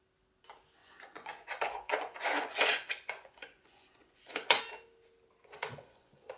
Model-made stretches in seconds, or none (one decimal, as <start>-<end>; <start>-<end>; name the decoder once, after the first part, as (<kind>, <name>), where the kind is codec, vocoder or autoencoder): 0.8-4.6 (vocoder, Vocos); 5.4-6.4